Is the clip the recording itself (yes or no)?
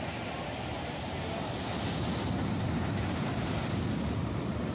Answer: yes